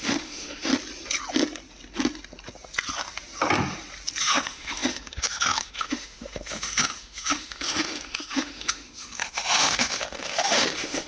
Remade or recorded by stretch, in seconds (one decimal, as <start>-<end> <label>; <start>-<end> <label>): 0.0-0.7 remade; 0.7-4.2 recorded; 4.2-11.1 remade